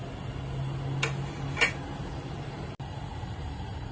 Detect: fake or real real